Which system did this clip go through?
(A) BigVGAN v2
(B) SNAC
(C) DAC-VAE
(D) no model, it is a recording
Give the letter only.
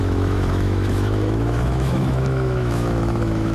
C